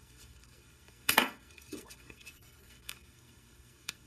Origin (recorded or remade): remade